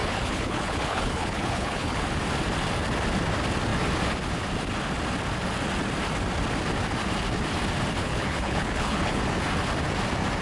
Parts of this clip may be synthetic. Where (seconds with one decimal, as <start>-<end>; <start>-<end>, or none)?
0.0-2.0; 8.0-9.2